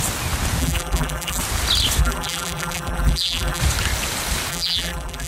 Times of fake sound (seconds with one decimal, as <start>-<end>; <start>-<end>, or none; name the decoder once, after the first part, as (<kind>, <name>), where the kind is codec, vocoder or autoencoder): 0.6-1.4 (vocoder, BigVGAN v2); 2.0-3.6; 4.5-5.3